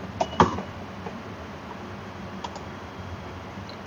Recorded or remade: recorded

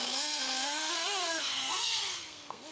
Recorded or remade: remade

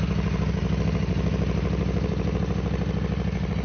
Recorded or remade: recorded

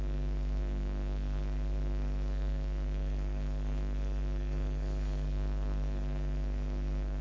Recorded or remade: remade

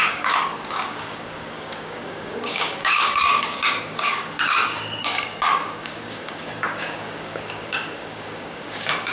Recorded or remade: remade